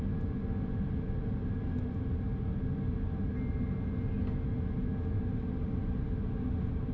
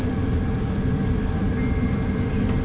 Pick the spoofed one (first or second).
second